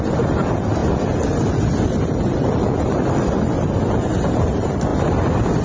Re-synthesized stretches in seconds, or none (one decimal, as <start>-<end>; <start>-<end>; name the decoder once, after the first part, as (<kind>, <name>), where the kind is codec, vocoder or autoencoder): none